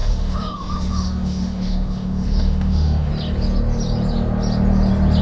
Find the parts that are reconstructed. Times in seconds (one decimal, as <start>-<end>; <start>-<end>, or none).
0.0-3.1